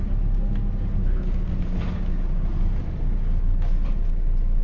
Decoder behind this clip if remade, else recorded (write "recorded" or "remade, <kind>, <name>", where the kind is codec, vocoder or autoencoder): recorded